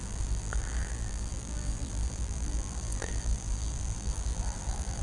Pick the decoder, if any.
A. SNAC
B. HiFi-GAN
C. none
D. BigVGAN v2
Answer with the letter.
D